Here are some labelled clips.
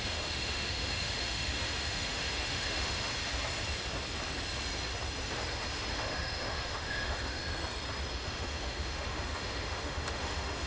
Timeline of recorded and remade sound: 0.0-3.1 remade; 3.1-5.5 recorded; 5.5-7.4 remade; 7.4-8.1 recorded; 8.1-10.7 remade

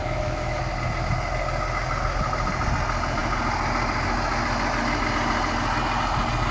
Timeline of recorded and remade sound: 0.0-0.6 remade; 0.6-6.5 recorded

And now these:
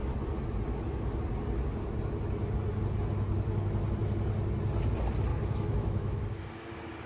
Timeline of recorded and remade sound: 0.0-5.3 recorded; 5.3-6.4 remade; 6.4-7.1 recorded